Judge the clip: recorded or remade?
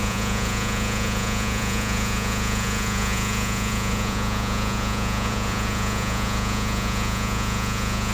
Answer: remade